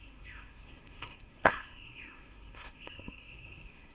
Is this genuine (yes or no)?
no